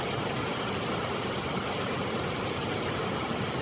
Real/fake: real